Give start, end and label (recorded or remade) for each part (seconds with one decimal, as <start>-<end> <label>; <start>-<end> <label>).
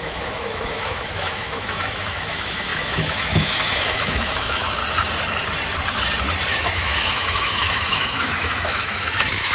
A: 0.0-4.8 remade; 4.8-6.5 recorded; 6.5-9.5 remade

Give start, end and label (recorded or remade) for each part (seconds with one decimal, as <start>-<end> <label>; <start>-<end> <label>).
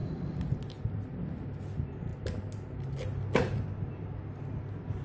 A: 0.0-5.0 recorded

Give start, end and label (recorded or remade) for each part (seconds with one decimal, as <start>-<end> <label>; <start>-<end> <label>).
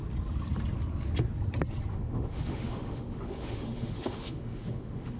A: 0.0-1.9 recorded; 1.9-5.2 remade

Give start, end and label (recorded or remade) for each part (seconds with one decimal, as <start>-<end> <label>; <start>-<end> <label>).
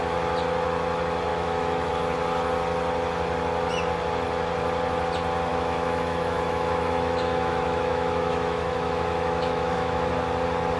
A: 0.0-1.3 recorded; 1.3-1.9 remade; 1.9-5.5 recorded; 5.5-10.1 remade; 10.1-10.8 recorded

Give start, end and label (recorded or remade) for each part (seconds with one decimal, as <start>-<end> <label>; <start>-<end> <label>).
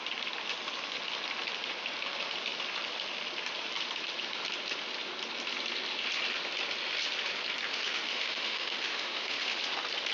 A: 0.0-7.7 recorded; 7.7-9.6 remade; 9.6-10.1 recorded